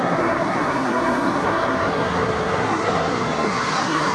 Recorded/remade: remade